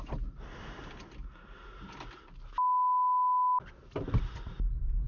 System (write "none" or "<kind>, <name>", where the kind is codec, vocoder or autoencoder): none